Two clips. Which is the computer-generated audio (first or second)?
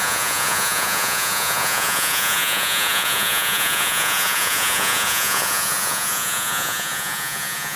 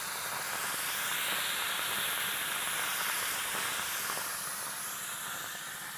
first